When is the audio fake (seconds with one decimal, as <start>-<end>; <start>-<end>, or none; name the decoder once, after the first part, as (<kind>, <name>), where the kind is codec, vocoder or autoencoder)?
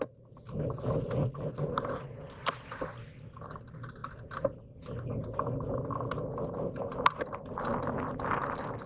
none